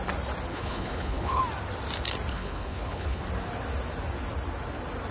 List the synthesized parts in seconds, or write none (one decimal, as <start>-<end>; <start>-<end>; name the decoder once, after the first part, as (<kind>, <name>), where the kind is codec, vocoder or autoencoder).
0.5-1.4 (codec, HILCodec); 2.3-3.2